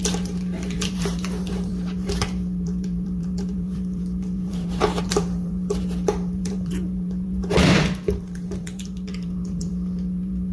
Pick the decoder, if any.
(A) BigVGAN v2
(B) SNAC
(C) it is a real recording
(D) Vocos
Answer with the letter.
A